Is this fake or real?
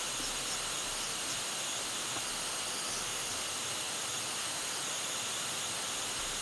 real